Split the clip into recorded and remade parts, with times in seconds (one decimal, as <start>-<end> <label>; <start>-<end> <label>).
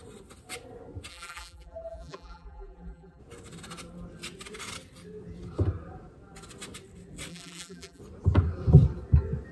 0.0-1.1 recorded; 1.1-3.2 remade; 3.2-7.3 recorded; 7.3-8.0 remade; 8.0-9.5 recorded